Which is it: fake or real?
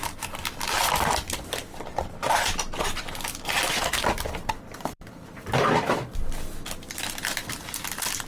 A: real